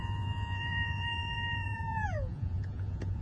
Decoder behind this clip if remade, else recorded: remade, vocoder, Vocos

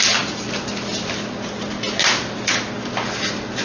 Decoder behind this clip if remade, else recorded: recorded